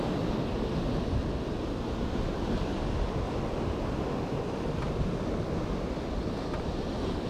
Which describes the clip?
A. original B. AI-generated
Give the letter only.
A